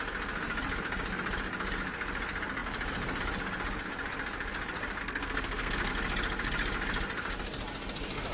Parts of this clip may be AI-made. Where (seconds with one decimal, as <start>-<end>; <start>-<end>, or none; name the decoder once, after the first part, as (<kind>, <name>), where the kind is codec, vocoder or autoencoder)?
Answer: 5.0-5.9 (codec, SNAC)